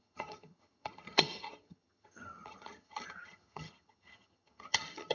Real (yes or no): no